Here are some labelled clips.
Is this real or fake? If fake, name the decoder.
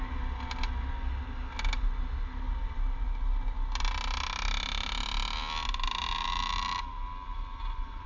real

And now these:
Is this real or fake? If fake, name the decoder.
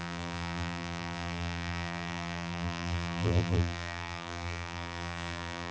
fake, vocoder, BigVGAN v2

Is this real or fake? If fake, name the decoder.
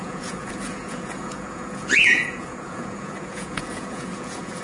fake, vocoder, Vocos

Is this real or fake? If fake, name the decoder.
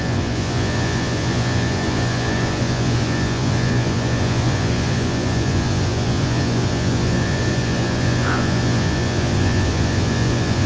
fake, vocoder, Vocos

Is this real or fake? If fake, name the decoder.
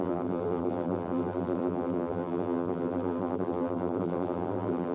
fake, vocoder, BigVGAN v2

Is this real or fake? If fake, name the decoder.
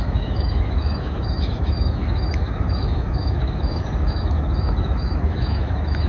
fake, autoencoder, DAC-VAE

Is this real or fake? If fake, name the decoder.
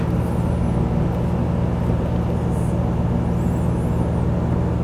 real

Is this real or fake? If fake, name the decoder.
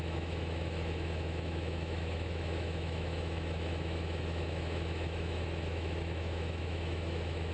fake, autoencoder, DAC-VAE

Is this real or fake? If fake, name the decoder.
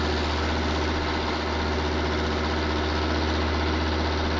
real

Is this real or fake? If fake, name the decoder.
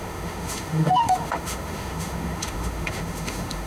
fake, autoencoder, DAC-VAE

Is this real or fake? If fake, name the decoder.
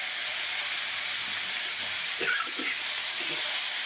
fake, vocoder, BigVGAN v2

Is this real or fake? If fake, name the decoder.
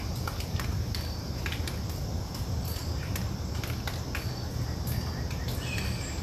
real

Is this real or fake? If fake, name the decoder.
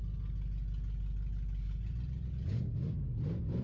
real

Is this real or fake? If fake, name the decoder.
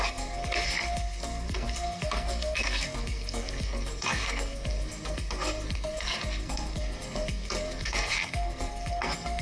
fake, codec, SNAC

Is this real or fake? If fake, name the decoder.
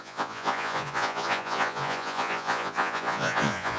fake, vocoder, Vocos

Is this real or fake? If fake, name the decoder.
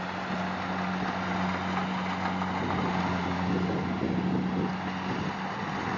real